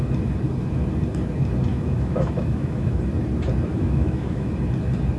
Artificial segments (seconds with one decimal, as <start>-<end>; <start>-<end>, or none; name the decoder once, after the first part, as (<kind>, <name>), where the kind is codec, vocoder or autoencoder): 1.7-3.0 (autoencoder, DAC-VAE); 3.7-4.5